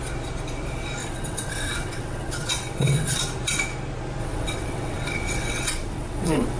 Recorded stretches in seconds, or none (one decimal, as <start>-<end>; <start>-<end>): 0.0-1.0; 3.2-4.2